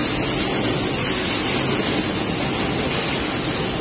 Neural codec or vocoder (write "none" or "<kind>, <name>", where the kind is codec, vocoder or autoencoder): none